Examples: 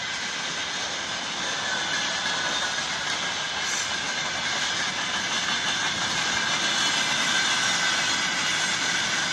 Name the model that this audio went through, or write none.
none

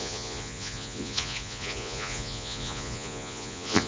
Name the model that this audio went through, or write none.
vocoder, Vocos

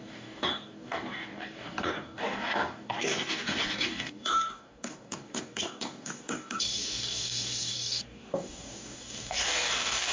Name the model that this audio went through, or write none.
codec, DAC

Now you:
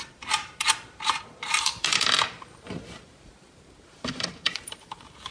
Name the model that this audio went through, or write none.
vocoder, BigVGAN v2